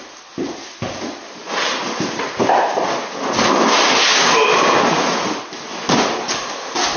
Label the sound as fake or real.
real